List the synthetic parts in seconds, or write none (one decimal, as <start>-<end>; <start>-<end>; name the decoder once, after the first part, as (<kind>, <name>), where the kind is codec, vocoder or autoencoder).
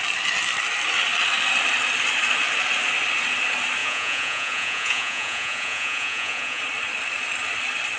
3.8-6.6 (vocoder, Vocos)